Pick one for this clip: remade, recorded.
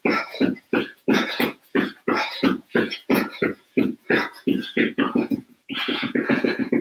remade